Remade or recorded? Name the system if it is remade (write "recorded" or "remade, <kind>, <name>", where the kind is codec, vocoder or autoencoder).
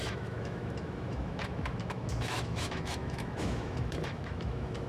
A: remade, autoencoder, DAC-VAE